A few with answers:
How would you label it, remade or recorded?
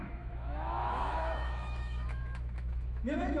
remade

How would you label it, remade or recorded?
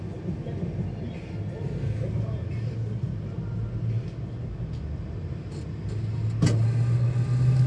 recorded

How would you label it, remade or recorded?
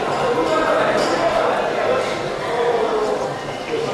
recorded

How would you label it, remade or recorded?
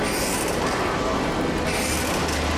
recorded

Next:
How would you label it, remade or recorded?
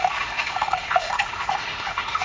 remade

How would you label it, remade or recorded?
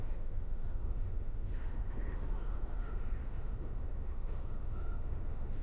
remade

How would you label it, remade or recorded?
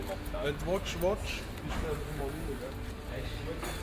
recorded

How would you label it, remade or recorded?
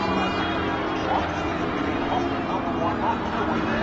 recorded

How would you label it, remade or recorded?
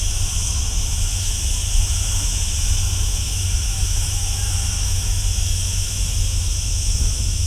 remade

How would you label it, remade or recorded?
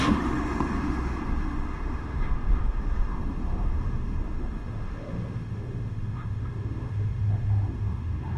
remade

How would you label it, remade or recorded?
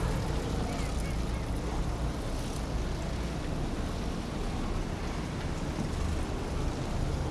recorded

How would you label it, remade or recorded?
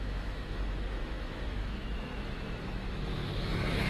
remade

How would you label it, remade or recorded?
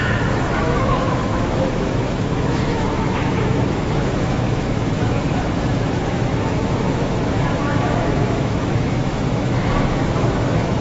remade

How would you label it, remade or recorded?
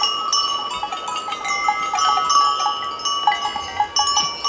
recorded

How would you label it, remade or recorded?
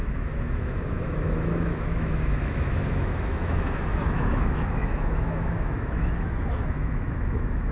remade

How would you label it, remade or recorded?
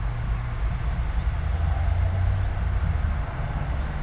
recorded